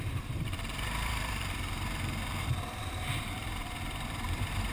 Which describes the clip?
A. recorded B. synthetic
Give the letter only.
B